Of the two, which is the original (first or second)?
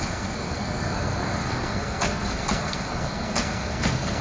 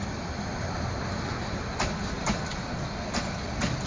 second